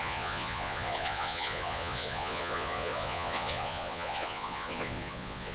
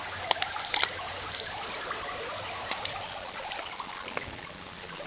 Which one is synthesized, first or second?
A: first